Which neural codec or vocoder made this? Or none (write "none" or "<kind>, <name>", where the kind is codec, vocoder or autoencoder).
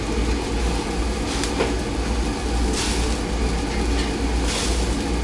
none